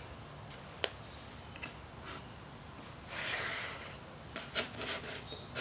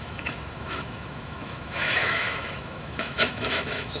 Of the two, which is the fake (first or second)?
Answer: second